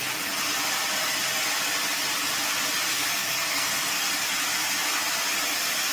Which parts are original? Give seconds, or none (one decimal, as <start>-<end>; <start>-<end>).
0.0-2.9; 4.1-5.9